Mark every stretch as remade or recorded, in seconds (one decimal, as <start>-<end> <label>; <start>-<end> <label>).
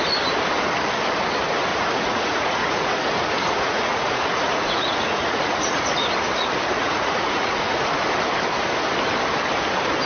0.0-1.7 recorded; 1.7-5.8 remade; 5.8-6.8 recorded; 6.8-7.8 remade; 7.8-10.1 recorded